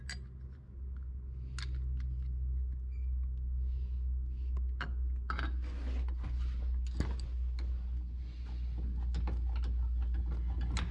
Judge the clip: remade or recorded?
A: recorded